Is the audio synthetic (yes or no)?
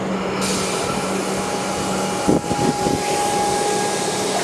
no